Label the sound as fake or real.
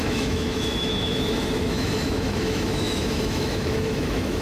fake